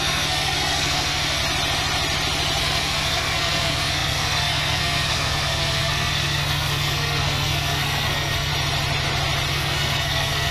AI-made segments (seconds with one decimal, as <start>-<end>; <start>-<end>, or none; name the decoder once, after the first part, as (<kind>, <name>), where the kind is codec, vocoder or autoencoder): 0.0-1.4 (codec, SNAC); 2.6-8.5; 9.5-10.5